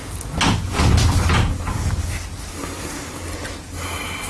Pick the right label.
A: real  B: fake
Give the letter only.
A